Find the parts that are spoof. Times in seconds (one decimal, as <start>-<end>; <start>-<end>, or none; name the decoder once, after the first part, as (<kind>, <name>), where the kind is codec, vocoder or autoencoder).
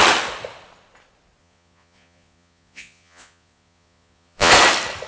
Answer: 1.4-4.5 (vocoder, Vocos)